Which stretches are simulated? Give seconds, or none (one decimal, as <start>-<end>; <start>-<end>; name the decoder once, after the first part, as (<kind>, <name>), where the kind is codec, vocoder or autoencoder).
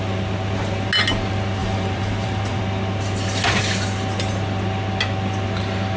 1.6-2.6 (vocoder, BigVGAN v2)